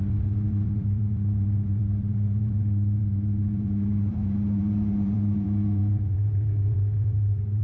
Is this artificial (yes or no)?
yes